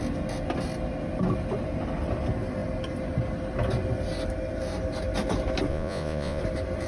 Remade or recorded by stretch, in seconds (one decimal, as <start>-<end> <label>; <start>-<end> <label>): 0.0-5.7 recorded; 5.7-6.4 remade; 6.4-6.9 recorded